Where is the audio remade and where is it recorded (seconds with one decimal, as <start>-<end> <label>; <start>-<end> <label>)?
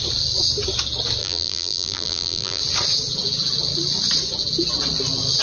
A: 0.0-1.2 recorded; 1.2-2.6 remade; 2.6-5.4 recorded